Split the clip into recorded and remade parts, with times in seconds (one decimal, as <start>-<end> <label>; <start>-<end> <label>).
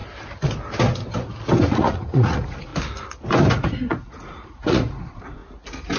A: 0.0-1.6 recorded; 1.6-2.7 remade; 2.7-3.5 recorded; 3.5-5.4 remade; 5.4-6.0 recorded